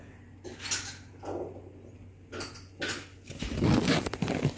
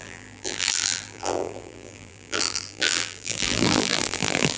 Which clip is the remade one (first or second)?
second